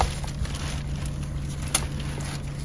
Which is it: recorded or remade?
recorded